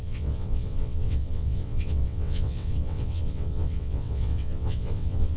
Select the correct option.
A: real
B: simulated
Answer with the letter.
B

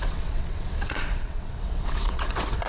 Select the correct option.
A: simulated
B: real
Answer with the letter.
A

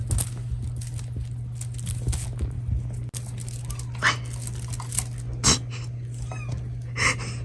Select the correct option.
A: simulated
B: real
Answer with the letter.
B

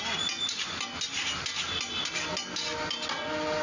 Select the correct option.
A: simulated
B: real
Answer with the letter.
B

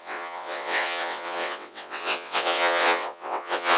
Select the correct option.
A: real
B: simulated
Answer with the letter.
B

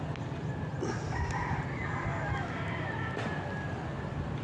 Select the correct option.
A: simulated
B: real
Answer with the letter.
B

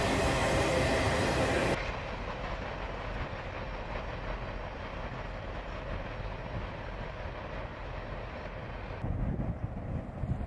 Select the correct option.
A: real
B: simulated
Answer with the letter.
A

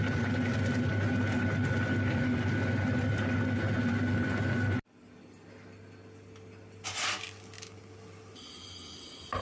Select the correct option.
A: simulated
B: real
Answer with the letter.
B